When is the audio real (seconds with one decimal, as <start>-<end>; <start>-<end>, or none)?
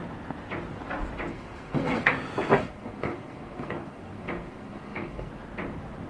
0.0-1.3; 2.1-2.5; 5.3-6.1